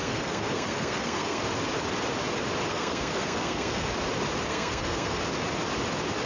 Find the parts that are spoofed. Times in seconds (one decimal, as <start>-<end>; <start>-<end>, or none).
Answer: 0.0-1.4; 2.7-3.9; 4.5-5.2